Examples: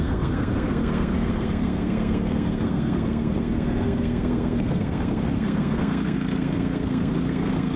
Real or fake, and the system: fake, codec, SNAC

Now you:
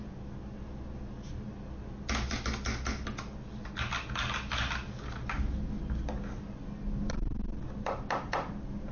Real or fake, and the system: real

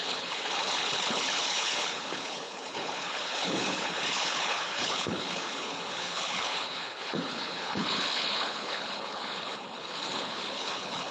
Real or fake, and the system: fake, codec, HILCodec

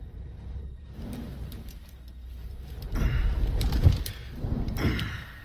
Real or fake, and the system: fake, vocoder, BigVGAN v2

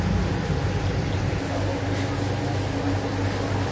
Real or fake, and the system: real